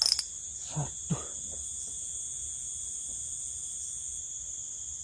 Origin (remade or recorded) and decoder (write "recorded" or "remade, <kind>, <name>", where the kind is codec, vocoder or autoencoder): recorded